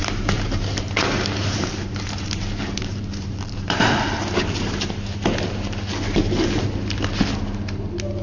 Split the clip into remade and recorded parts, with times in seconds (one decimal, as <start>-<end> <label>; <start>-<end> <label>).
0.0-4.2 remade; 4.2-8.2 recorded